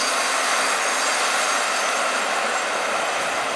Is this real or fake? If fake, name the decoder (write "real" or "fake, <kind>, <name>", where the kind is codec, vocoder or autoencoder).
real